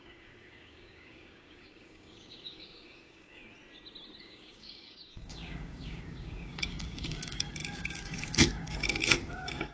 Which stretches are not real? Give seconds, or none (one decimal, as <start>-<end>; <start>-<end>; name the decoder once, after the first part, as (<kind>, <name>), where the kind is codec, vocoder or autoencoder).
0.0-3.4 (codec, DAC); 4.2-9.7